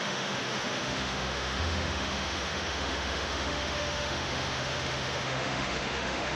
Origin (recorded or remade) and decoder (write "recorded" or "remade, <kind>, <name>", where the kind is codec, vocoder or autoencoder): remade, autoencoder, DAC-VAE